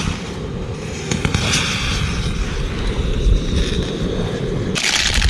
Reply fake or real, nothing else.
real